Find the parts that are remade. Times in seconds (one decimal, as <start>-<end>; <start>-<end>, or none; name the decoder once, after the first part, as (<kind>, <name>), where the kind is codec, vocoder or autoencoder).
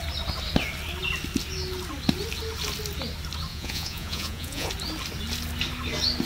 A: 3.5-4.7 (vocoder, Vocos)